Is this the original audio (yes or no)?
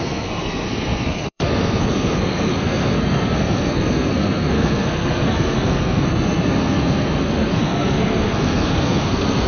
no